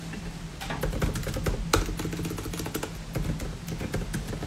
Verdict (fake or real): real